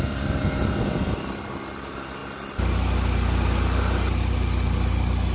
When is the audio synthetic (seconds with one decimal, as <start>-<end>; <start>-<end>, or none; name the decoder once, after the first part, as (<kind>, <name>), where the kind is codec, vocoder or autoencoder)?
none